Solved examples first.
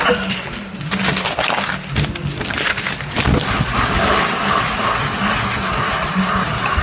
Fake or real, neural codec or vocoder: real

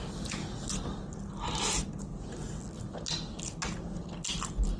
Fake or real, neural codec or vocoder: real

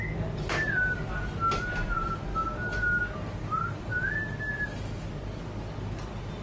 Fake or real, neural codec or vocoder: real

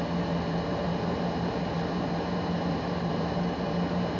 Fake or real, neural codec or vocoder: fake, vocoder, BigVGAN v2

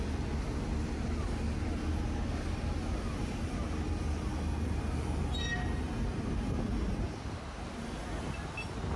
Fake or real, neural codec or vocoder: real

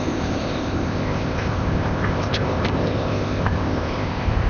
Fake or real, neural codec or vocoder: fake, codec, ZipCodec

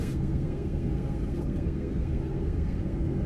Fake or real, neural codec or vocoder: fake, codec, SNAC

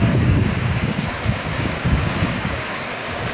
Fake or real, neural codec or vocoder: fake, codec, DAC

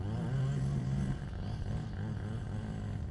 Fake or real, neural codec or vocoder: real